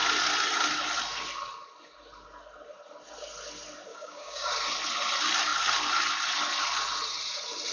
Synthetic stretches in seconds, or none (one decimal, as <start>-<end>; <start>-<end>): 3.9-4.5